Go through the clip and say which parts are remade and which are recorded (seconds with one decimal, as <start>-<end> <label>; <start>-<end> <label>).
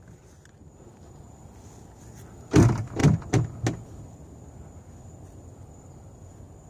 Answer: 0.0-6.7 recorded